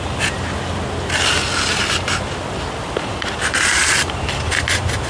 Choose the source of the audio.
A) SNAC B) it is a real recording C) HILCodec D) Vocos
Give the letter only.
B